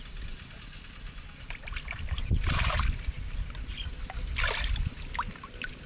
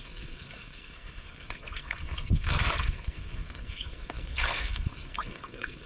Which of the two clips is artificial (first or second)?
second